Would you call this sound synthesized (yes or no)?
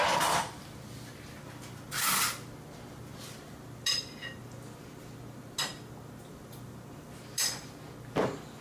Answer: no